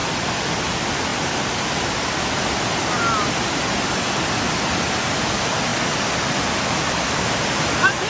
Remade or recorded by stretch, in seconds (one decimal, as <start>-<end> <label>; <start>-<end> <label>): 0.0-0.5 remade; 0.5-1.1 recorded; 1.1-2.6 remade; 2.6-5.7 recorded; 5.7-7.6 remade; 7.6-8.1 recorded